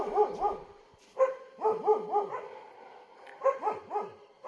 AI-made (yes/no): no